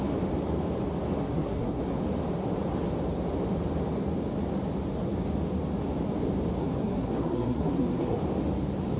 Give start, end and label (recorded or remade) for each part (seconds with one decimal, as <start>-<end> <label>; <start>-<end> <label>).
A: 0.0-1.2 recorded; 1.2-1.8 remade; 1.8-6.6 recorded; 6.6-8.2 remade; 8.2-9.0 recorded